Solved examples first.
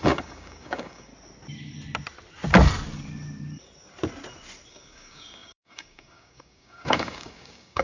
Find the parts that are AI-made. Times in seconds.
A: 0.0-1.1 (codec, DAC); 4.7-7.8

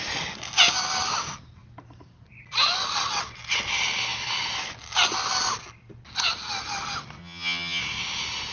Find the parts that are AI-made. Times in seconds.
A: 7.2-7.8 (vocoder, HiFi-GAN)

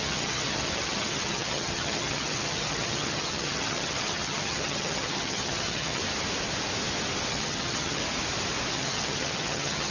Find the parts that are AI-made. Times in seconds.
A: 0.0-6.0 (vocoder, HiFi-GAN); 7.3-8.0; 8.7-9.9

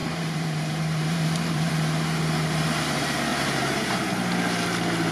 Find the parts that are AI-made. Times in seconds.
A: 0.0-1.7 (vocoder, BigVGAN v2); 3.3-4.0

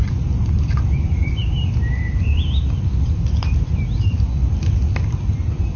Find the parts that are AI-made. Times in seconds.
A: 0.0-5.8 (vocoder, BigVGAN v2)